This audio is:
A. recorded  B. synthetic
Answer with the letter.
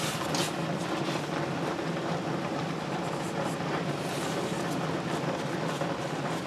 A